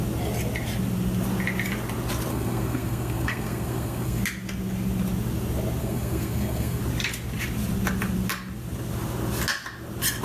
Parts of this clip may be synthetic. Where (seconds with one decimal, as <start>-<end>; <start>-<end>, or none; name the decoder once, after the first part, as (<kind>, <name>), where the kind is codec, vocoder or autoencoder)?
2.3-4.2 (codec, SNAC); 5.8-6.8

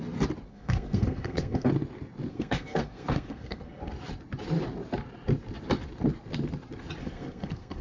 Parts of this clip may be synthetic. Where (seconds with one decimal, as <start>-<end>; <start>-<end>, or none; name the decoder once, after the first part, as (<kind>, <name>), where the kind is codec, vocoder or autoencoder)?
0.5-1.7 (codec, SNAC); 2.3-3.9; 7.0-7.8

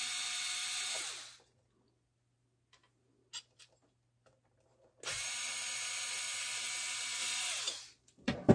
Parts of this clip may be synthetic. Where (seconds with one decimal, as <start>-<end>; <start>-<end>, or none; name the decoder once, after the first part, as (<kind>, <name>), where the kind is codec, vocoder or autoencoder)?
0.6-1.1 (vocoder, BigVGAN v2); 7.2-8.5

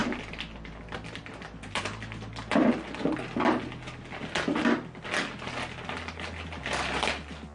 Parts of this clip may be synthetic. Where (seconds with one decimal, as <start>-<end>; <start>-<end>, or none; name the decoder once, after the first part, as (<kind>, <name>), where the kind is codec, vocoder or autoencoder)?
none

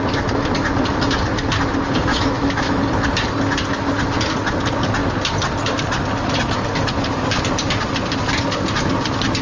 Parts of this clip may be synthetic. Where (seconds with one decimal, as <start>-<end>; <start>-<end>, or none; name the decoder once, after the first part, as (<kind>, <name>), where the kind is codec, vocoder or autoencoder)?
2.1-2.8 (autoencoder, DAC-VAE)